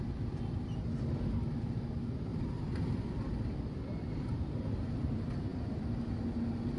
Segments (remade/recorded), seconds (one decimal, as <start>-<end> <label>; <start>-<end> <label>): 0.0-2.3 recorded; 2.3-3.3 remade; 3.3-5.5 recorded; 5.5-6.0 remade; 6.0-6.8 recorded